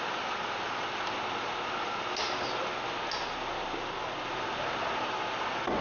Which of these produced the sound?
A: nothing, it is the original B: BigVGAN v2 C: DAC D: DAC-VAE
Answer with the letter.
A